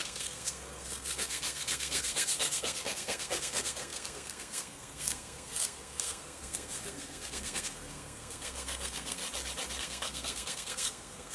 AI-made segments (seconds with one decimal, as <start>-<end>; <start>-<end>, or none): 0.0-9.2; 9.8-11.3